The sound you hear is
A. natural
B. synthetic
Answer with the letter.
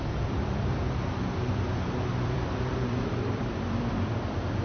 B